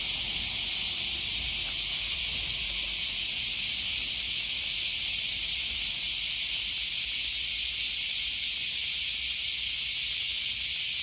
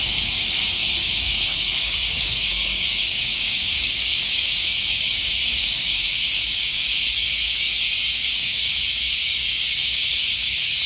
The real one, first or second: first